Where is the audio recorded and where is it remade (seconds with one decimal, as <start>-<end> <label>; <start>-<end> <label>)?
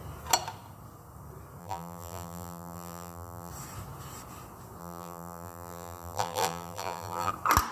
0.0-1.6 recorded; 1.6-3.5 remade; 3.5-4.8 recorded; 4.8-7.3 remade; 7.3-7.7 recorded